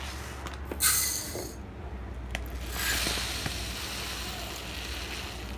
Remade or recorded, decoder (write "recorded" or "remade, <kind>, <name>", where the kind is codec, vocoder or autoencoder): recorded